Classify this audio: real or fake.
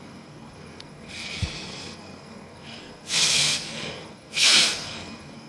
fake